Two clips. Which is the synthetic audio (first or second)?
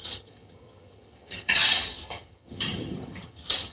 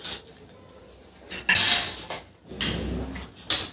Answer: first